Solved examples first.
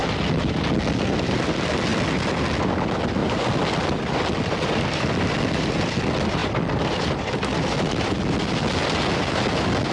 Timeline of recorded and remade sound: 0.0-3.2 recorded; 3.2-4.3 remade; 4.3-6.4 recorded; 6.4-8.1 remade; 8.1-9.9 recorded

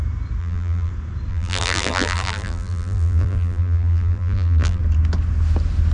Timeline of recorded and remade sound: 0.0-0.4 recorded; 0.4-0.9 remade; 0.9-1.3 recorded; 1.3-4.8 remade; 4.8-5.9 recorded